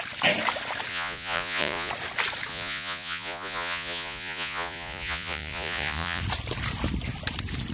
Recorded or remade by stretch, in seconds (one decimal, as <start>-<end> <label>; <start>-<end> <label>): 0.0-0.9 recorded; 0.9-1.9 remade; 1.9-2.5 recorded; 2.5-6.2 remade; 6.2-7.7 recorded